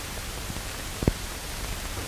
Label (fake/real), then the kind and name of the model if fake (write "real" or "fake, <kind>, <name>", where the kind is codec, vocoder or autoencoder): real